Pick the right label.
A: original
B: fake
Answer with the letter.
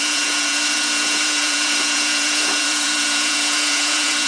B